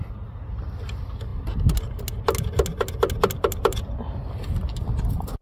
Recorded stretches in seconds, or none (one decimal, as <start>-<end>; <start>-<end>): 0.0-5.4